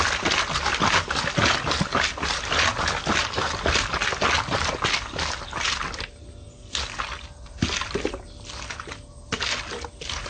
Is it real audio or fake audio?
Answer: real